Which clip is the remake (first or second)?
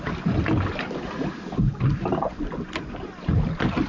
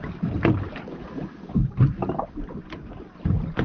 second